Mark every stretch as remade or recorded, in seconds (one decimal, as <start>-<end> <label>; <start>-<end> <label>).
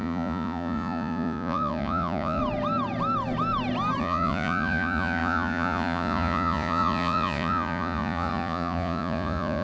0.0-2.4 remade; 2.4-4.0 recorded; 4.0-9.6 remade